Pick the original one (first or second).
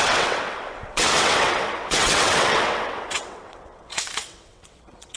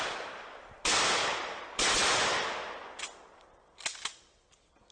second